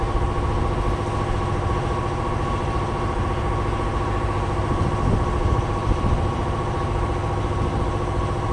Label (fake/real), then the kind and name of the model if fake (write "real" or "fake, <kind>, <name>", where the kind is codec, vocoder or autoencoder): real